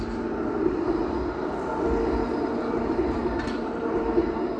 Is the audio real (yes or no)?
yes